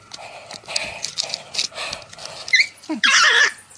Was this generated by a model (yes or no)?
no